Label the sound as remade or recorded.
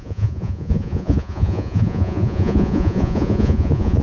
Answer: remade